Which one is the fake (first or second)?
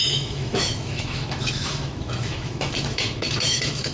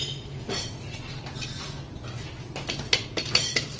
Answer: first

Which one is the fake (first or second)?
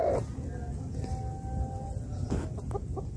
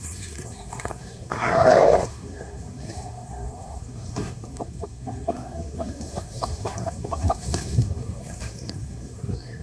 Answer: second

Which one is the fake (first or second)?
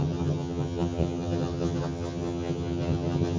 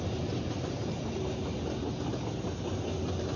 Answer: first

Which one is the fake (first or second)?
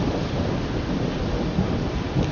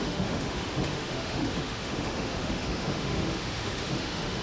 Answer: second